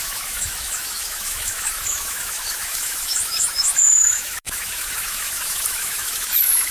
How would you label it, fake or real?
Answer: fake